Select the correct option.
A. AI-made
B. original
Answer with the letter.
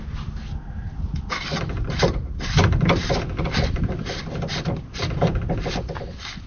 B